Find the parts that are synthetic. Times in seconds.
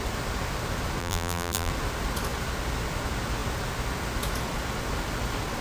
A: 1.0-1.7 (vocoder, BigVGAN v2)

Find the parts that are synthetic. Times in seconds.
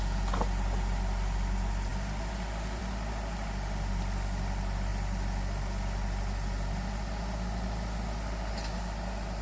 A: none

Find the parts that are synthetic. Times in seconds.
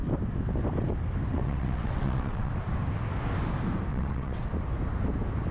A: 1.3-2.5 (vocoder, WaveNeXt); 3.9-4.4